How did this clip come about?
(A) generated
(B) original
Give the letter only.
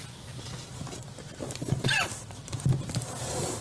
B